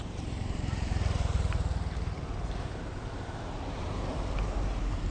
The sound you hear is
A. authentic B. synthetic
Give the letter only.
B